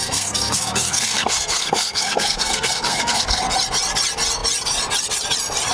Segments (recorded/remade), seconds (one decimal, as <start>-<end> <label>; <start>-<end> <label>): 0.0-3.4 remade; 3.4-5.7 recorded